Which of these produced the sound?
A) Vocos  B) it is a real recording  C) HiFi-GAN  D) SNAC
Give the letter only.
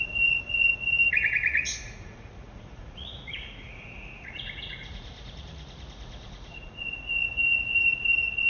A